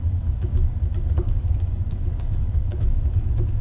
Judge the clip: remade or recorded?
remade